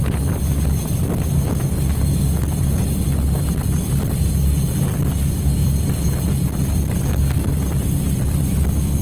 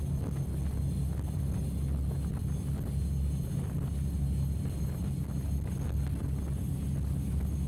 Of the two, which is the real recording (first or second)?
second